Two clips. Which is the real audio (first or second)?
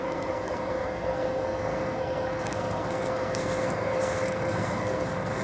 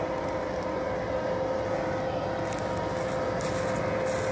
second